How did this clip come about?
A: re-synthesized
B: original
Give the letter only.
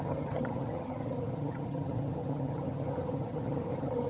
A